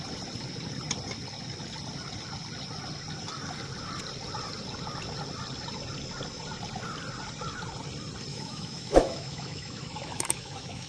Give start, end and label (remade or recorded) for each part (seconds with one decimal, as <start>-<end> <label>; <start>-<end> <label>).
0.0-8.3 recorded; 8.3-10.9 remade